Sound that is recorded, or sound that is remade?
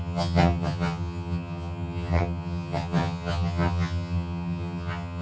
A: remade